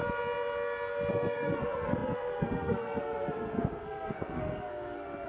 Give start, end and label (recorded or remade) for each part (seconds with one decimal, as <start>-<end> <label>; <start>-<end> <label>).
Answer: 0.0-1.1 recorded; 1.1-5.3 remade